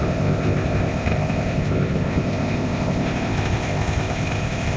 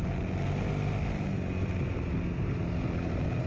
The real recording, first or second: second